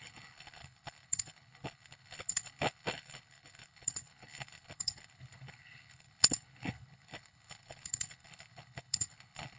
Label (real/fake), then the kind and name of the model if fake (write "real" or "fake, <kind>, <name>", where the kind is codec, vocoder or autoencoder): fake, codec, HILCodec